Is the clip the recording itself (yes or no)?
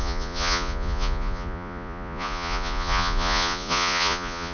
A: no